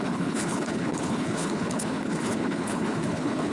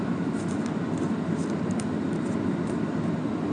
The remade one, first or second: first